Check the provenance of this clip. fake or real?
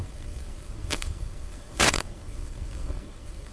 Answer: fake